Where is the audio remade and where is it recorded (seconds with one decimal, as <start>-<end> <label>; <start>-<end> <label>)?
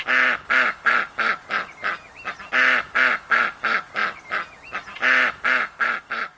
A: 0.0-6.4 recorded